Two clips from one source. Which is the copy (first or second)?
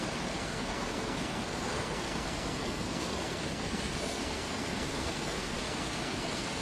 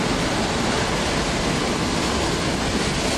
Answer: first